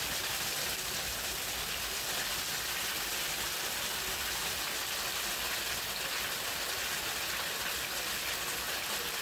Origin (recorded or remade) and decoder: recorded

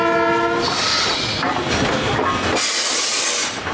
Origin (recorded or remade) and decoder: recorded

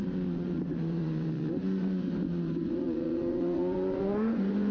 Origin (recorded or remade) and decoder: remade, vocoder, Vocos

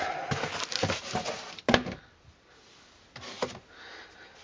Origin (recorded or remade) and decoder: recorded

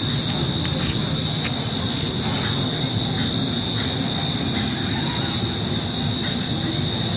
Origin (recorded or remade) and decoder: recorded